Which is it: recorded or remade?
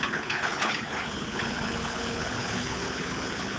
remade